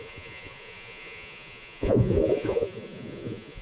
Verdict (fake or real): fake